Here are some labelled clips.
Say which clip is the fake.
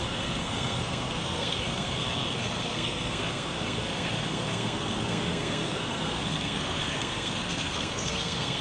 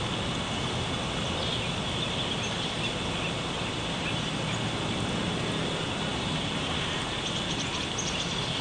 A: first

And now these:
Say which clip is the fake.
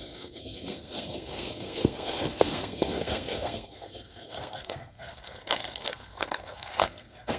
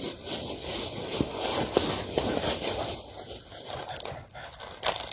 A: first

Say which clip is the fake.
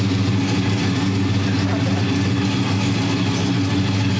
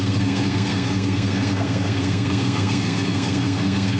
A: second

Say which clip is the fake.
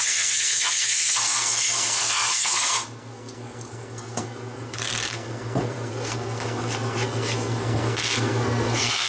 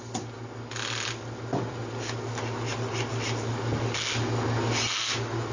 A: first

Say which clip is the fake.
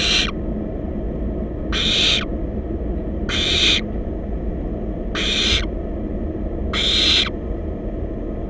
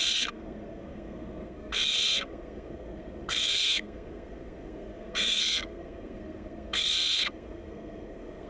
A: second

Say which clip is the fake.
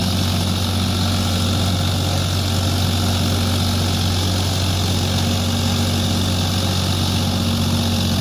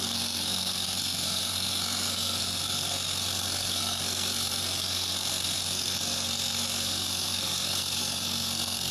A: second